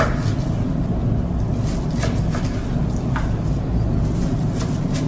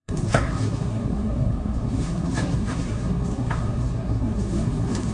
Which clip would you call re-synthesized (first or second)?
second